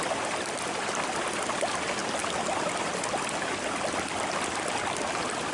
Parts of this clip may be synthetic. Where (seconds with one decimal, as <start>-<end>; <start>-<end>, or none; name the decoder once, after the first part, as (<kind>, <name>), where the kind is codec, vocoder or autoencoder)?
none